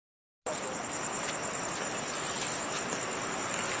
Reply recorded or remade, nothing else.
recorded